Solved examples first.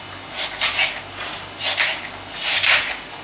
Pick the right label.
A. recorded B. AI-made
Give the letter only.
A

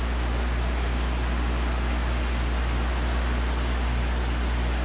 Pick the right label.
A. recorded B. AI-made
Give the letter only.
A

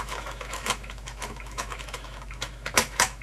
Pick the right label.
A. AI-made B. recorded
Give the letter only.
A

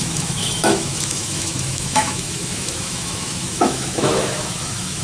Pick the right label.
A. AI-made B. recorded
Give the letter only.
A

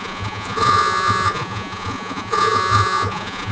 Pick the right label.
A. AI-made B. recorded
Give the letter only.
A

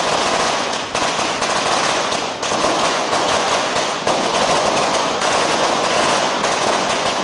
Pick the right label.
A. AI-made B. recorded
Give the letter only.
A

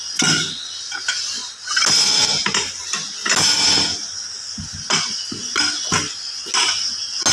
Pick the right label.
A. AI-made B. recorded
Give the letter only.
B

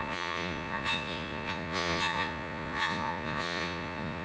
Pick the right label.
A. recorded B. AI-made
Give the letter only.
B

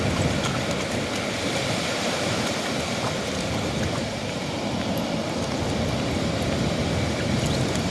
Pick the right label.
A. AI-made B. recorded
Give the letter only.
B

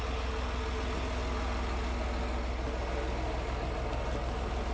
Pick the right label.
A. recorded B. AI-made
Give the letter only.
A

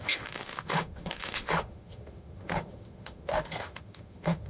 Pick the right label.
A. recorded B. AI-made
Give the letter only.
B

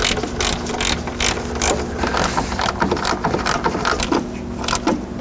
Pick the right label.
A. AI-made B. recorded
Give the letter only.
B